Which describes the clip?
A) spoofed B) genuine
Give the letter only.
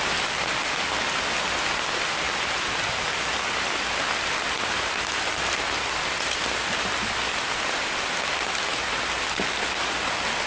B